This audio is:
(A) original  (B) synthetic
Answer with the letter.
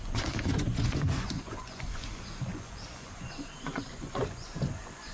B